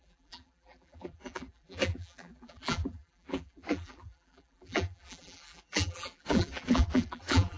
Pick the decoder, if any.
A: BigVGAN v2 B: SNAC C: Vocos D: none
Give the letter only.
A